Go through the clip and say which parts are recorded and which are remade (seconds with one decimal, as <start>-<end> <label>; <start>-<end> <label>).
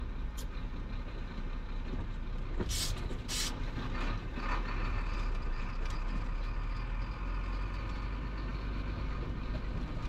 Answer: 0.0-10.1 recorded